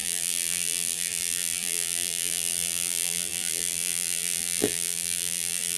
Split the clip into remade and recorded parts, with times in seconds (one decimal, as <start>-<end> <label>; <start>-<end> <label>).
0.0-5.8 remade